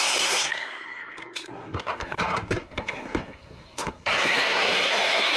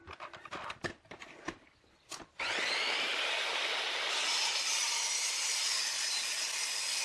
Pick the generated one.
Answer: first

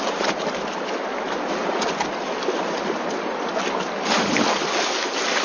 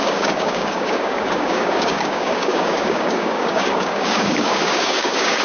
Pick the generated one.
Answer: second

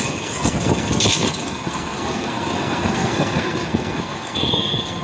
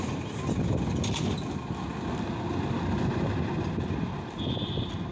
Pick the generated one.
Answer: first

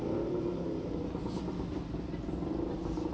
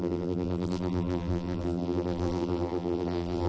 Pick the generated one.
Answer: second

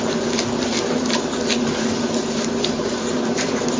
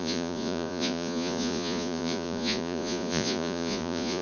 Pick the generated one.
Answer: second